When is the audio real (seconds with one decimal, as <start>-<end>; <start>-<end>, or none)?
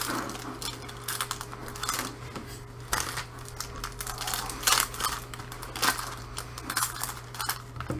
0.0-8.0